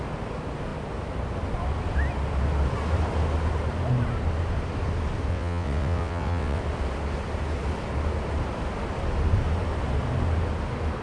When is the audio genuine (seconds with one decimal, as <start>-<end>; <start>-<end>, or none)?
0.0-5.3; 6.6-11.0